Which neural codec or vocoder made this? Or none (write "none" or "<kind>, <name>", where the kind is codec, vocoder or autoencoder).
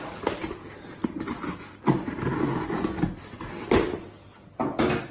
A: none